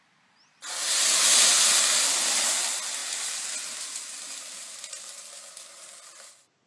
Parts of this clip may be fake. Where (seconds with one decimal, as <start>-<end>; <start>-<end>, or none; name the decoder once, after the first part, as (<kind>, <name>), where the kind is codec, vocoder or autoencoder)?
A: none